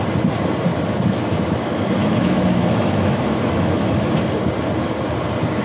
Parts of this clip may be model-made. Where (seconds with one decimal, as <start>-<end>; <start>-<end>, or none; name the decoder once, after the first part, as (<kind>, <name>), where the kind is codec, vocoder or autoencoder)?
0.7-4.1 (autoencoder, DAC-VAE)